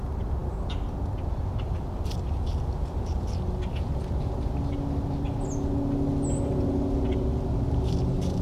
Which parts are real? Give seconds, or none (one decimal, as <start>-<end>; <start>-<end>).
0.0-8.4